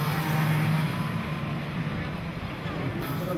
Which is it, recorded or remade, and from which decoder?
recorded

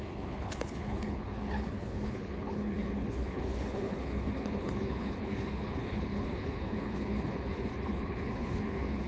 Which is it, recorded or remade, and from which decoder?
remade, codec, HILCodec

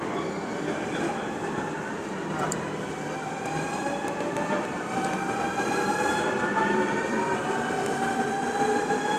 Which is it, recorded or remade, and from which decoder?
remade, vocoder, BigVGAN v2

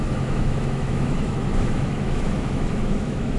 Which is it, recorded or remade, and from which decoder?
remade, autoencoder, DAC-VAE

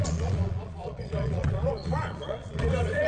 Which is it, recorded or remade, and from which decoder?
remade, vocoder, Vocos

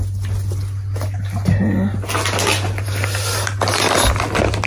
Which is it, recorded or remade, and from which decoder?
recorded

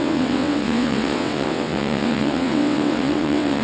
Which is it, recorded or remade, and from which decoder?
remade, vocoder, WaveNeXt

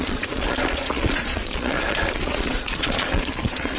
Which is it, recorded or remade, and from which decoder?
remade, vocoder, Vocos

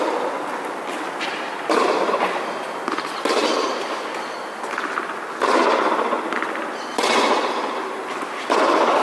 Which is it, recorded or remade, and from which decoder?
recorded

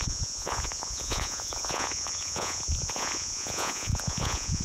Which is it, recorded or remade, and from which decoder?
remade, vocoder, Vocos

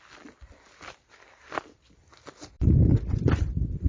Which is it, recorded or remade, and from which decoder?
recorded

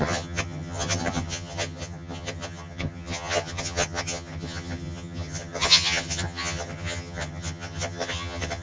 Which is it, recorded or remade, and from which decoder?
remade, vocoder, HiFi-GAN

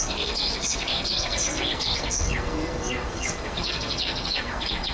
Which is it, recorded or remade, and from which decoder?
remade, codec, SNAC